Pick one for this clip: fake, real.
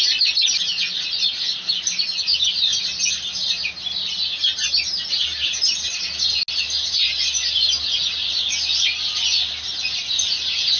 real